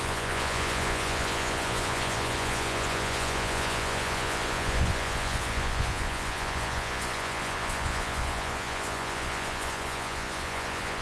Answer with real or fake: fake